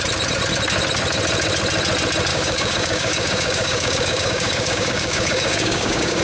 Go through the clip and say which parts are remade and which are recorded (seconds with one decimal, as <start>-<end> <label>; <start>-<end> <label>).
0.0-2.3 recorded; 2.3-6.2 remade